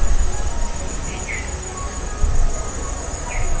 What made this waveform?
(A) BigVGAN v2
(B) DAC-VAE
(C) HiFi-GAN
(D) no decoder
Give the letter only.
D